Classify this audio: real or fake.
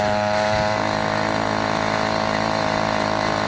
real